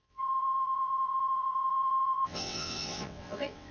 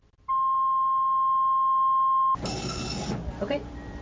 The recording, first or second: second